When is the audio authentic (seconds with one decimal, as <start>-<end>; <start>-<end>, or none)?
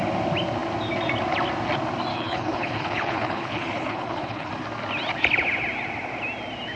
0.0-2.1; 4.5-6.8